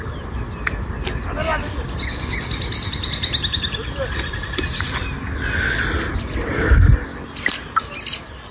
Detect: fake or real real